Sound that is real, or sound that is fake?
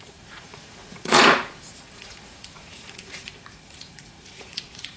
fake